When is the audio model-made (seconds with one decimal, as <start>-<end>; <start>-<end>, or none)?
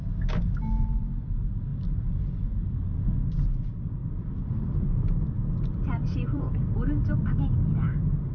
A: 4.0-6.4